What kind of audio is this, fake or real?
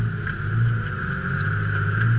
real